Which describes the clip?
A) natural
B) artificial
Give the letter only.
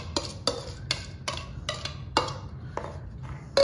A